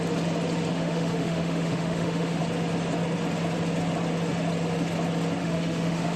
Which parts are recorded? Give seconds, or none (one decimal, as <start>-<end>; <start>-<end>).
0.0-0.7; 2.4-5.4